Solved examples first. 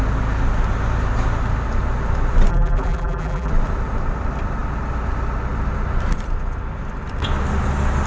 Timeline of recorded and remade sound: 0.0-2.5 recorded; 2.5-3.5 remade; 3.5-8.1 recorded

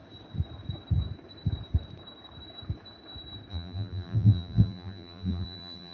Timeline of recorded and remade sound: 0.0-3.5 recorded; 3.5-5.9 remade